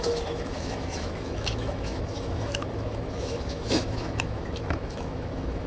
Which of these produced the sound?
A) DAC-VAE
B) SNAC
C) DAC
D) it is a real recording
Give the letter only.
A